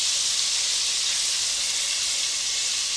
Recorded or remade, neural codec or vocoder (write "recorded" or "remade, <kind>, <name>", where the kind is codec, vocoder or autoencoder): recorded